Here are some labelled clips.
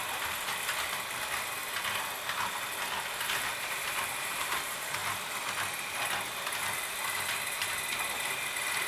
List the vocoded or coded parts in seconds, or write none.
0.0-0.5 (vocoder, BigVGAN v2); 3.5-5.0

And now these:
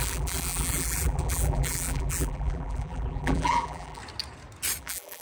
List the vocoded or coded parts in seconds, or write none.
0.0-4.0 (vocoder, BigVGAN v2); 4.8-5.2

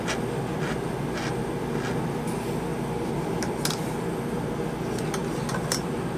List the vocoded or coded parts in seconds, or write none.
none

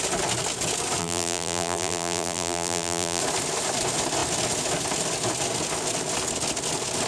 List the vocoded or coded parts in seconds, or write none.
1.0-3.2 (vocoder, BigVGAN v2)

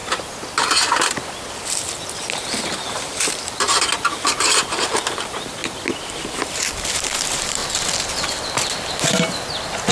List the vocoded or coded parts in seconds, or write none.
2.3-5.6 (vocoder, BigVGAN v2); 7.0-7.6

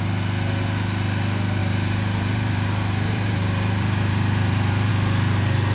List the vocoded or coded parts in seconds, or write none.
1.6-4.9 (vocoder, BigVGAN v2)

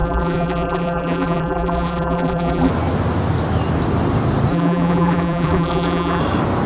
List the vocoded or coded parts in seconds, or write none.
0.0-2.7 (vocoder, BigVGAN v2); 4.5-6.2